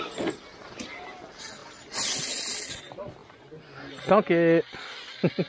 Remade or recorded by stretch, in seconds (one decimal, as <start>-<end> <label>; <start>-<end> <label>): 0.0-5.5 recorded